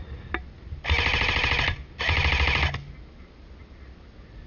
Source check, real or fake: real